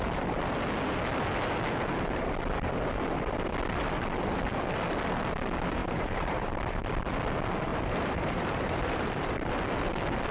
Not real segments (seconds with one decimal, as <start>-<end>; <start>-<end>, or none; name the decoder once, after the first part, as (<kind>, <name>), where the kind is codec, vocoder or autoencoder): 5.8-6.8 (vocoder, BigVGAN v2); 7.7-9.5